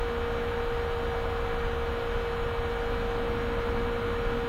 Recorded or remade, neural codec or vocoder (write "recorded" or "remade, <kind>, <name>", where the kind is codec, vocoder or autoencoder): recorded